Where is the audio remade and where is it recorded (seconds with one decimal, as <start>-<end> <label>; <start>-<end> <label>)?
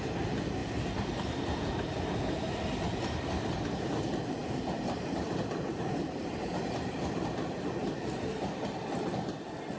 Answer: 0.0-9.8 recorded